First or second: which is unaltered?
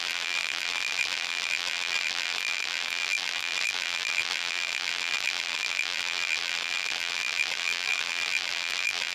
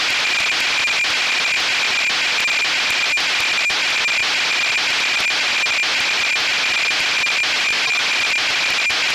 second